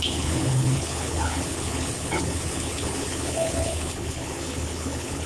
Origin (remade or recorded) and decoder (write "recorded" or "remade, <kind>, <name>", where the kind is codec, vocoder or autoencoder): remade, codec, HILCodec